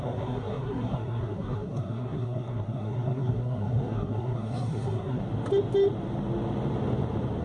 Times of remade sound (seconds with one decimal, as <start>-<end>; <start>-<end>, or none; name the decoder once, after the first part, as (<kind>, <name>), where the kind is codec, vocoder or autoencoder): 0.0-5.2 (codec, SNAC)

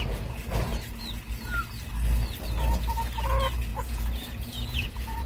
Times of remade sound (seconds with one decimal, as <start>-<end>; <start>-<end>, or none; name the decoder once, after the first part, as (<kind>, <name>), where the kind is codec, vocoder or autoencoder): 3.7-5.3 (vocoder, Vocos)

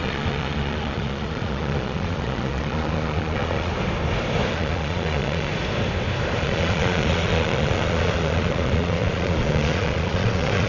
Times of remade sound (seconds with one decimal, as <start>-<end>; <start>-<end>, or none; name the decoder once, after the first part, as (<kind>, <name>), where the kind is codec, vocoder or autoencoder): 0.0-3.7 (vocoder, Vocos); 4.5-5.5; 6.4-10.7

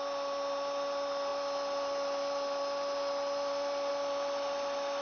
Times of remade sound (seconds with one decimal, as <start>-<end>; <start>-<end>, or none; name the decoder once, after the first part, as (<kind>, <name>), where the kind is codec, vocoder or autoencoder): none